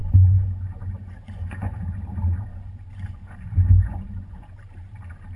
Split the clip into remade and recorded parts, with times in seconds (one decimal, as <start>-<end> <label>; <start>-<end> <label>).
0.0-1.7 remade; 1.7-2.5 recorded; 2.5-4.5 remade; 4.5-5.4 recorded

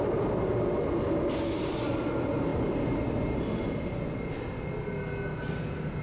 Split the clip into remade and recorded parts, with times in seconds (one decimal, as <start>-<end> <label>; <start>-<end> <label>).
0.0-6.0 recorded

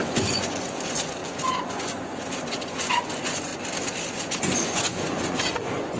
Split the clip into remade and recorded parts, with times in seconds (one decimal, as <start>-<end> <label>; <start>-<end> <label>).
0.0-3.5 remade; 3.5-4.1 recorded; 4.1-6.0 remade

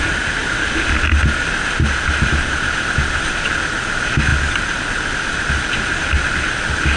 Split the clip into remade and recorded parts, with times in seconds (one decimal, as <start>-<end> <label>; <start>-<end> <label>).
0.0-7.0 recorded

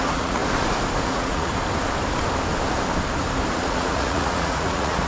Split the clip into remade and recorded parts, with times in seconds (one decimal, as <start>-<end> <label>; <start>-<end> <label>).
0.0-0.4 remade; 0.4-1.0 recorded; 1.0-1.5 remade; 1.5-3.5 recorded; 3.5-5.1 remade

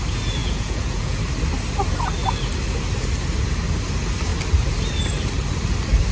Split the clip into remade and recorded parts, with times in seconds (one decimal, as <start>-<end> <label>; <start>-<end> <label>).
0.0-0.4 recorded; 0.4-1.2 remade; 1.2-6.1 recorded